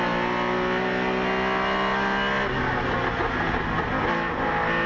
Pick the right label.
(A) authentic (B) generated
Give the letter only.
A